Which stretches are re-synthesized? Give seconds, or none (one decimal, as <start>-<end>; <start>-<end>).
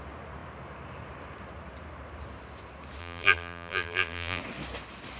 3.0-4.4